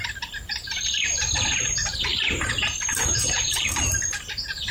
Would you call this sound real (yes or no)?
no